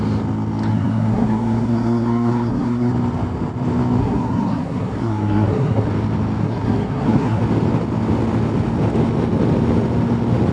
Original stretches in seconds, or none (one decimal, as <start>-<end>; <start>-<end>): 0.0-0.7; 2.9-4.0; 5.9-6.4; 7.4-10.5